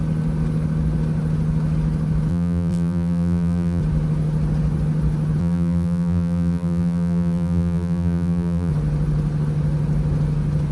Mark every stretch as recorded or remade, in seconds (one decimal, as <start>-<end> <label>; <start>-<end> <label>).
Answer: 0.0-2.3 recorded; 2.3-3.8 remade; 3.8-5.4 recorded; 5.4-8.7 remade; 8.7-10.7 recorded